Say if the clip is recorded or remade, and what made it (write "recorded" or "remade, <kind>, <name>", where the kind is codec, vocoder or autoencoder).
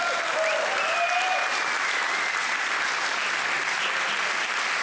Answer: recorded